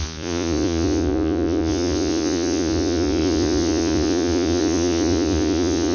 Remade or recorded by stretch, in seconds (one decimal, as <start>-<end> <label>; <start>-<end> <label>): 0.0-5.9 remade